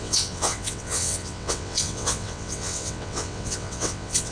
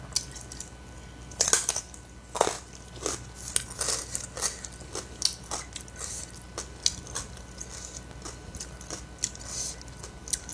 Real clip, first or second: second